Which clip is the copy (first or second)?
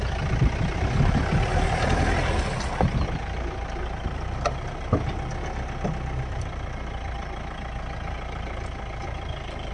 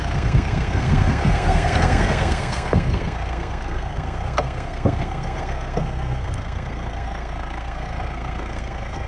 second